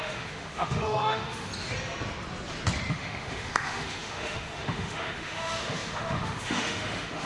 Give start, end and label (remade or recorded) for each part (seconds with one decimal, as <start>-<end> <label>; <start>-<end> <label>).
0.0-1.5 remade; 1.5-2.9 recorded; 2.9-7.3 remade